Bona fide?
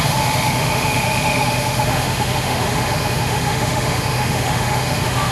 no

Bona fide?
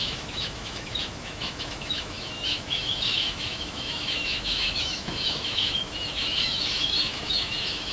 no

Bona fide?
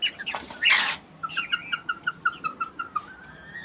yes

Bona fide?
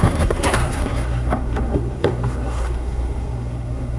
no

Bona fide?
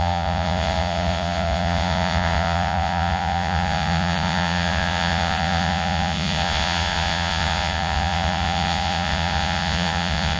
no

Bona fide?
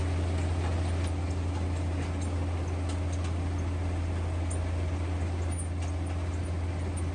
yes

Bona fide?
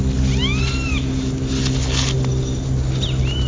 yes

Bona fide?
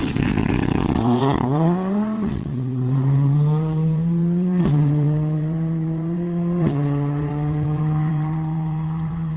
no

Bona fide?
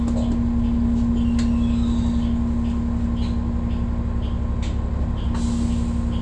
yes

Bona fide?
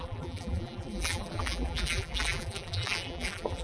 no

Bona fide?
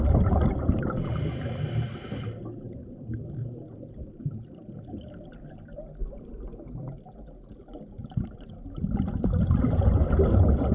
yes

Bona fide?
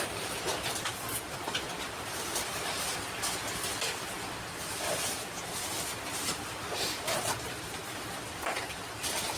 no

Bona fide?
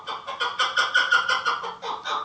yes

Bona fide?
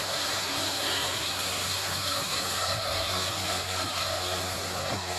no